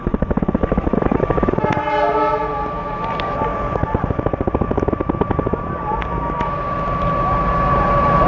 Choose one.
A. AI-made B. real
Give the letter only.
B